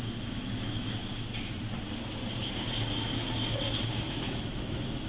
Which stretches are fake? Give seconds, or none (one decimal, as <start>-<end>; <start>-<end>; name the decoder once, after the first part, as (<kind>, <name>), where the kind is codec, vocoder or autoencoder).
0.0-1.0 (autoencoder, DAC-VAE); 4.1-5.1